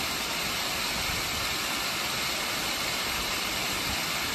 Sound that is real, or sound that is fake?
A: real